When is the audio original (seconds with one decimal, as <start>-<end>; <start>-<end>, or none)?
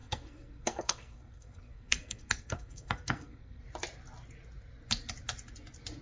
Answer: 3.6-6.0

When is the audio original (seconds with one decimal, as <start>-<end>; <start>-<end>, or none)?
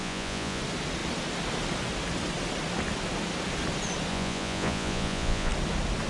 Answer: 0.6-4.1; 5.5-6.1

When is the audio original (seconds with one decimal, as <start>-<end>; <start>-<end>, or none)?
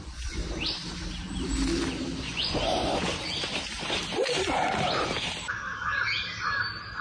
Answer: 0.4-2.2; 3.1-7.0